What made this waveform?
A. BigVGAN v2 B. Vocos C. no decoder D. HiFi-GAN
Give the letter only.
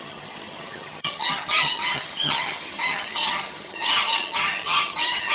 D